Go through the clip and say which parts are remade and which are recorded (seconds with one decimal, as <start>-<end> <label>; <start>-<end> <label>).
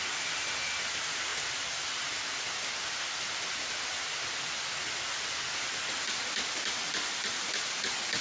0.0-8.2 recorded